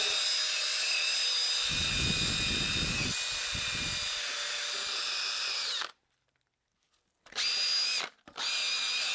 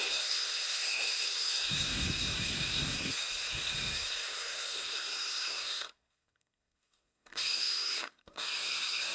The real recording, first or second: first